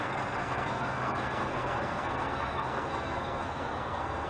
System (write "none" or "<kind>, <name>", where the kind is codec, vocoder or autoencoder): codec, SNAC